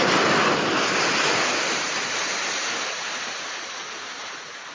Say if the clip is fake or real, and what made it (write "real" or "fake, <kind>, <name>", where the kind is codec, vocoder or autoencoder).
real